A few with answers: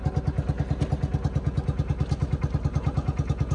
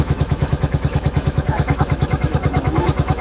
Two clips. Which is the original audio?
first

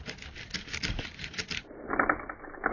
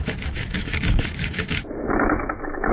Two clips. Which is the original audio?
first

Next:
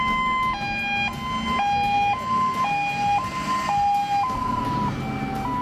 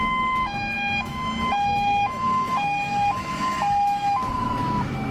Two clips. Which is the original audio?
first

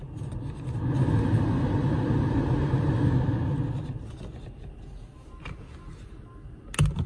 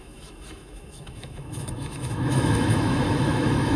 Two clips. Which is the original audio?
first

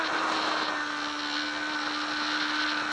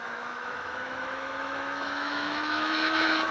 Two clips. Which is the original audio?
first